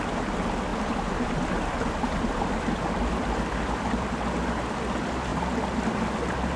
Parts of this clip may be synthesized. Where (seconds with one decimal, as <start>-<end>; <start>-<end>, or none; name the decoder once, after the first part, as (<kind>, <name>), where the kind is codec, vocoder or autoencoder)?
0.7-4.1 (vocoder, BigVGAN v2)